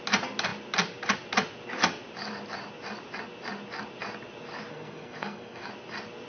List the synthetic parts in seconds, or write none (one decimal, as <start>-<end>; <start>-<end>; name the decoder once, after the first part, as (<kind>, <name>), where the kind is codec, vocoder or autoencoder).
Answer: 4.7-5.7 (codec, SNAC)